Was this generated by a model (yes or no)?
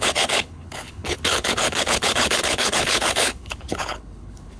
yes